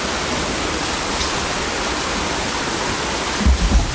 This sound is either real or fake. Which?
real